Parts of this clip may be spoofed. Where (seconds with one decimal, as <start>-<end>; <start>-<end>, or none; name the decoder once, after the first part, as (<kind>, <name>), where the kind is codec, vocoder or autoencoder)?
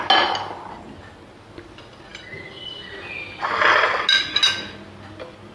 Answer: none